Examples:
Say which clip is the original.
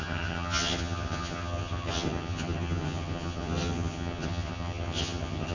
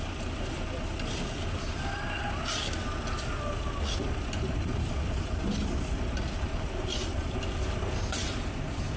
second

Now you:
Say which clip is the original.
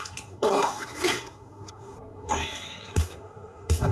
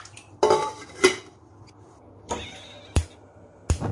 second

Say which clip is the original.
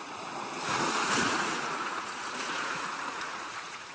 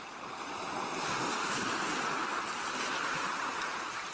second